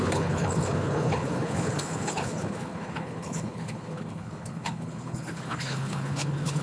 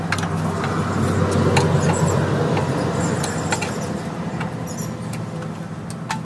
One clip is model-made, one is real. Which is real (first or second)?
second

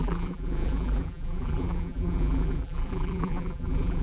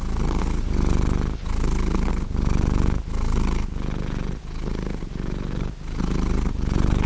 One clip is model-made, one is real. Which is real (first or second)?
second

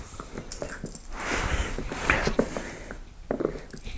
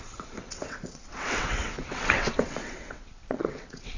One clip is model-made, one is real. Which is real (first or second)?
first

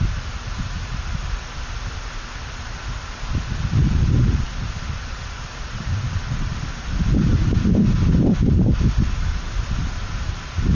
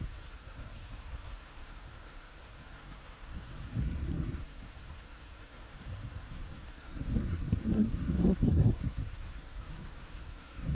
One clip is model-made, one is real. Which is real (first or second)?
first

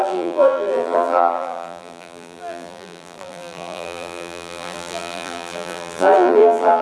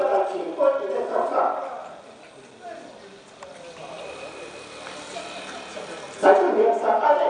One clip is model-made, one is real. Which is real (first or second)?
second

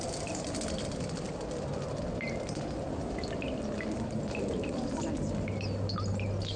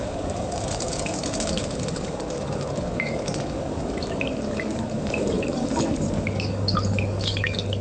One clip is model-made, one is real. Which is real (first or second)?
first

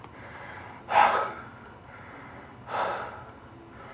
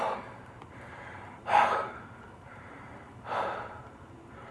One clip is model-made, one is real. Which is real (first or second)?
first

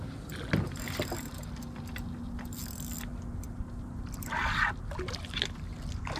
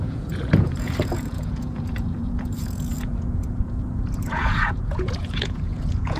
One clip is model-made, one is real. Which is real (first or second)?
first